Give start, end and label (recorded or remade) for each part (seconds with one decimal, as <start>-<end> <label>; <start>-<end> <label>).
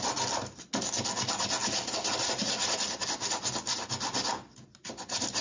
0.0-5.4 recorded